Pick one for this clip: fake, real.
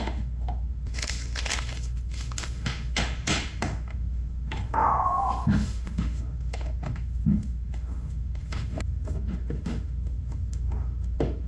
fake